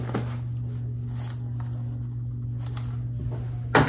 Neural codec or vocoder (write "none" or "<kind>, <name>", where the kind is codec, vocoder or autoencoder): none